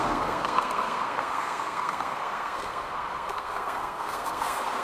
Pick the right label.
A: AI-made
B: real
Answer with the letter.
A